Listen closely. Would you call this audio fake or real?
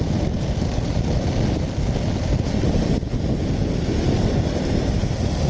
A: real